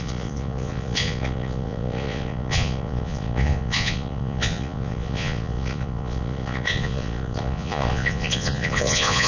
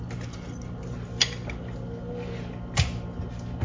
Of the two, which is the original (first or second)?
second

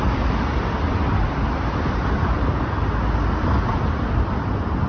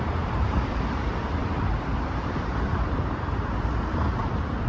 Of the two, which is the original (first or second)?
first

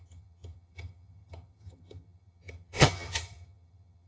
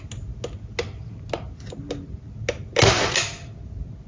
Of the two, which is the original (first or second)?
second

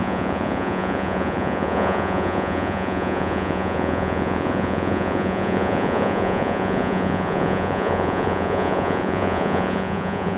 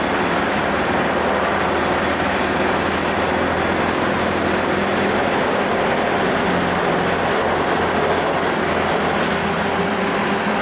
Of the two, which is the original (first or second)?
second